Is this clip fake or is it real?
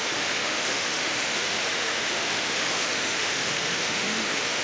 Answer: fake